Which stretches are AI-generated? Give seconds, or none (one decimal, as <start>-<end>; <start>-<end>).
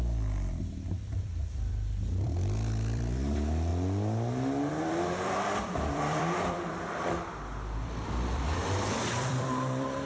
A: 0.0-3.7; 4.7-10.1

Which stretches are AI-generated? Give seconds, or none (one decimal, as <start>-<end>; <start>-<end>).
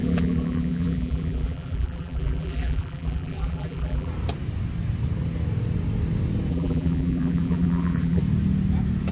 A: 0.0-4.1; 6.5-8.2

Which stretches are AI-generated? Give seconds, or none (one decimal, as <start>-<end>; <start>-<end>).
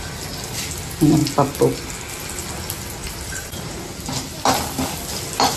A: 3.0-3.8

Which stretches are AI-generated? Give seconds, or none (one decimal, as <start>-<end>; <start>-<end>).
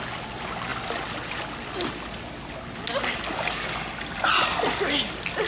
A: none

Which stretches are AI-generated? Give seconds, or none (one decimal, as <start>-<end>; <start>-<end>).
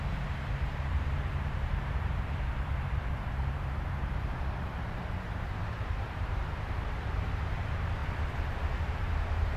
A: 0.0-8.0; 8.9-9.6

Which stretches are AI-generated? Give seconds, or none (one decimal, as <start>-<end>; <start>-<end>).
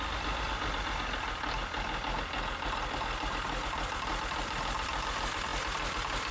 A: 0.0-1.6; 2.9-6.3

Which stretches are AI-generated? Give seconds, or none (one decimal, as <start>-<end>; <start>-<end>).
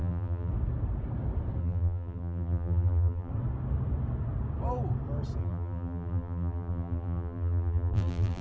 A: 0.0-0.5; 1.6-3.3; 5.4-8.4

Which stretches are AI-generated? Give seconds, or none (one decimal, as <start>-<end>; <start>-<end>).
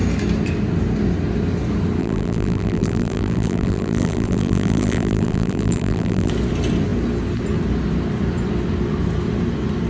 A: 2.0-6.3